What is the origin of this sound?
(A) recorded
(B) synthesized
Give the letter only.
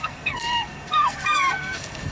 B